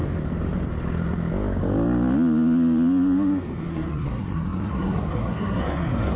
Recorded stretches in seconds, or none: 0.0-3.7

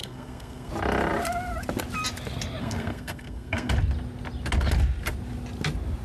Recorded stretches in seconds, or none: 0.7-2.6; 3.7-6.0

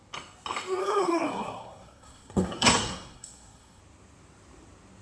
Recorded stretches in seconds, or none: 0.0-0.8; 3.8-5.0

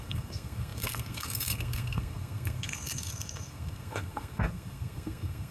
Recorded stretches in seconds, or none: none